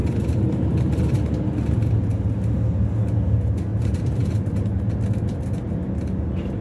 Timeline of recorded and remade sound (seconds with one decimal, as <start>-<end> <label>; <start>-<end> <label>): 0.0-1.0 remade; 1.0-3.7 recorded; 3.7-4.6 remade; 4.6-6.6 recorded